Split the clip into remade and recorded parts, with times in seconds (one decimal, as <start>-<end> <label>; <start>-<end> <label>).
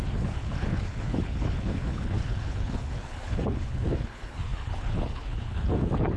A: 0.0-6.2 remade